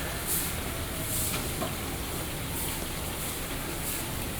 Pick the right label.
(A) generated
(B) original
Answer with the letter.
B